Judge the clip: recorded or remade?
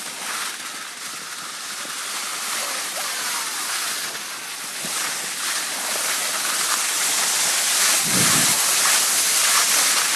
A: recorded